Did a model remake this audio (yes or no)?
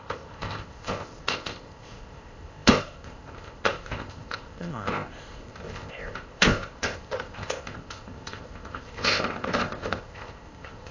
yes